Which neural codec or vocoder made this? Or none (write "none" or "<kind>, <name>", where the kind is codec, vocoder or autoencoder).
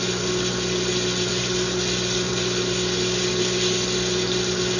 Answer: none